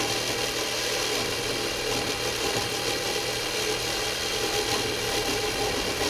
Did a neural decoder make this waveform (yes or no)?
no